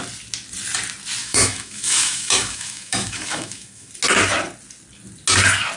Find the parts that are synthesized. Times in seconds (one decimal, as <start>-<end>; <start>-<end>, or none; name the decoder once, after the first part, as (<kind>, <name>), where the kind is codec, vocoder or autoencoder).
1.2-3.9 (autoencoder, DAC-VAE)